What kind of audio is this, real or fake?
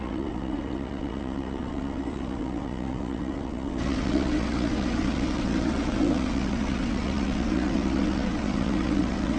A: fake